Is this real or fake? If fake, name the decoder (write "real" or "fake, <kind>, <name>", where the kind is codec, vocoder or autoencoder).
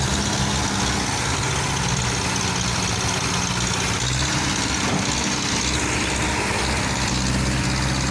real